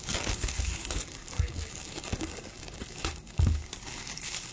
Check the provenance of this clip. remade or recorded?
remade